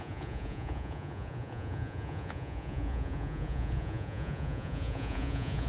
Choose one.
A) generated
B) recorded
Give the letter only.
A